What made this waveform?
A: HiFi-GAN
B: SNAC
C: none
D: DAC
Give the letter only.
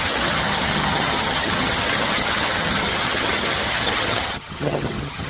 A